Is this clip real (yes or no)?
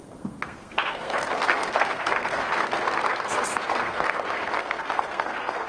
no